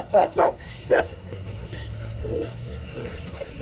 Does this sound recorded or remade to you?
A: remade